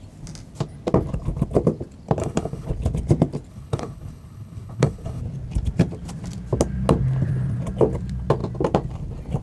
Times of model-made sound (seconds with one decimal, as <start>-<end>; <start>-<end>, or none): 2.2-2.7; 3.5-5.2